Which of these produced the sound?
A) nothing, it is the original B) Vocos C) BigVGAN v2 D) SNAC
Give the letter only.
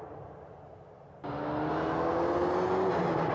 A